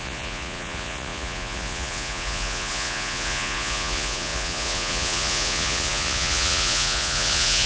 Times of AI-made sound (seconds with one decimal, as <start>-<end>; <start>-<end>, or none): 0.0-7.7